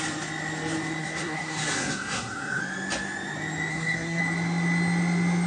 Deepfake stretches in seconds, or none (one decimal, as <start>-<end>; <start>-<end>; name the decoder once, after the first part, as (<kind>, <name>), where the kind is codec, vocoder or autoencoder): 1.0-2.6 (codec, SNAC); 3.7-4.2